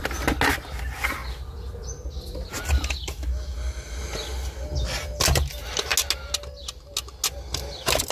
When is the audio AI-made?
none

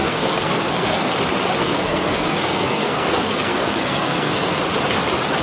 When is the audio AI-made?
0.0-1.1 (codec, SNAC); 1.6-4.6

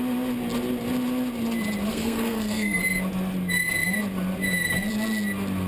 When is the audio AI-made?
1.9-2.8 (codec, SNAC)

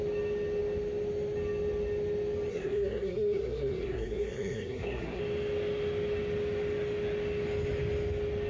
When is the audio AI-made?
2.5-5.2 (codec, SNAC)

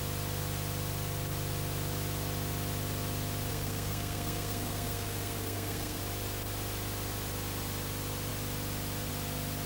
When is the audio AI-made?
3.5-6.0 (codec, SNAC)

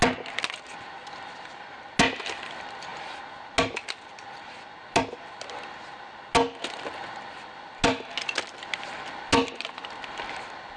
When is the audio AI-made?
none

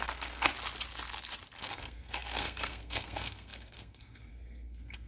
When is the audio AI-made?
0.0-0.5 (codec, SNAC); 1.6-5.1

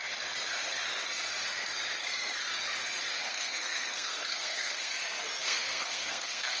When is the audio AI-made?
3.3-4.9 (codec, SNAC); 5.4-6.6